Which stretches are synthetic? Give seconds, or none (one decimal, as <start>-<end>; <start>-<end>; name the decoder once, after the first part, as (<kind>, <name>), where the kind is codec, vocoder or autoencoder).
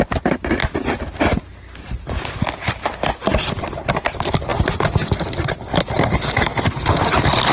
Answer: 4.5-7.0 (vocoder, BigVGAN v2)